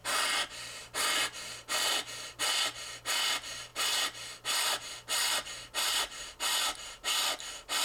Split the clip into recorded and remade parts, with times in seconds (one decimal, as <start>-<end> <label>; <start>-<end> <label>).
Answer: 0.0-7.8 recorded

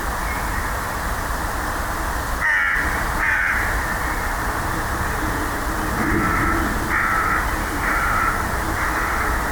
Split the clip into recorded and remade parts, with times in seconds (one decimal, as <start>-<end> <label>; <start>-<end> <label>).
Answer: 0.0-7.6 recorded; 7.6-8.2 remade; 8.2-9.5 recorded

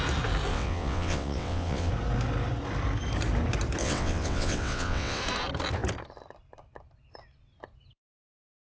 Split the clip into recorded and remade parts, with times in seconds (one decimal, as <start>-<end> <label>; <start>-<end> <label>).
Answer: 0.0-0.5 recorded; 0.5-1.9 remade; 1.9-3.8 recorded; 3.8-5.2 remade; 5.2-8.8 recorded

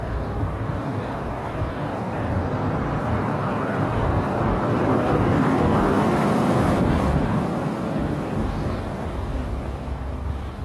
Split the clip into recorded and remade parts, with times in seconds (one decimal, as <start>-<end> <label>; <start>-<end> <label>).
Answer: 0.0-2.4 remade; 2.4-3.0 recorded; 3.0-10.6 remade

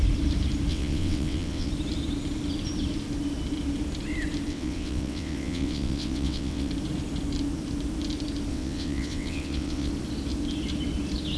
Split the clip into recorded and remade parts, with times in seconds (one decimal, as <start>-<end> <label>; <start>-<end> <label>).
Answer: 0.0-0.7 recorded; 0.7-1.7 remade; 1.7-4.5 recorded; 4.5-6.7 remade; 6.7-8.5 recorded; 8.5-9.9 remade; 9.9-11.4 recorded

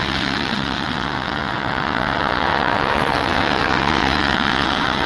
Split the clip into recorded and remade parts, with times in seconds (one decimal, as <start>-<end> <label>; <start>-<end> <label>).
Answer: 0.0-5.1 remade

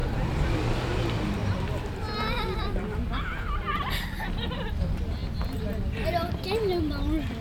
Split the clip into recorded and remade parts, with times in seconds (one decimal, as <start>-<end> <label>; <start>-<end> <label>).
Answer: 0.0-7.4 recorded